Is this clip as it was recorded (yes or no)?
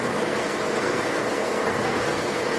no